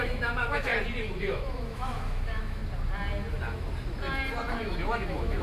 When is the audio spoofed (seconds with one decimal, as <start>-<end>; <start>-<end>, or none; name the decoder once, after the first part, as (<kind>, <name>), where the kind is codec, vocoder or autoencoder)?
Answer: 0.0-0.7 (autoencoder, DAC-VAE); 1.2-2.6; 4.6-5.4

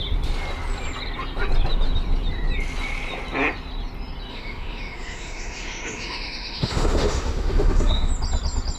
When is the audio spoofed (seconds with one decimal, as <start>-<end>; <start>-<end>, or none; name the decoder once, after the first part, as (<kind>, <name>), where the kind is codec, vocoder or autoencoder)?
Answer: 4.3-8.1 (autoencoder, DAC-VAE)